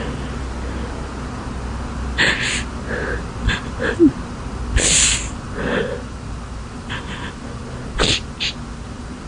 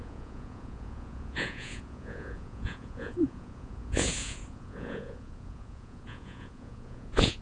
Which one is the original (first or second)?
first